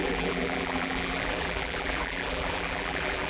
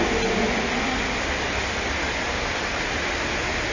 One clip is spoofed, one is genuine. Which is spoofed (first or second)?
first